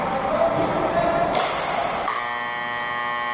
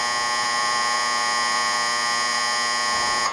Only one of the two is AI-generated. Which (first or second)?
second